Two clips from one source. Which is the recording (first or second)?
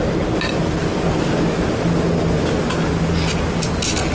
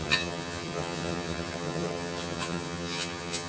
first